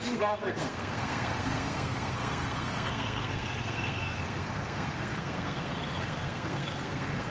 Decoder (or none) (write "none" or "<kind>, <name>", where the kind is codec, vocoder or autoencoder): codec, SNAC